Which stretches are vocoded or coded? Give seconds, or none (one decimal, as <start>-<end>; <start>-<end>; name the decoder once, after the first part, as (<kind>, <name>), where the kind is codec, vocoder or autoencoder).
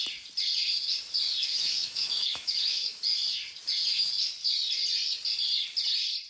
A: 1.4-3.0 (autoencoder, DAC-VAE)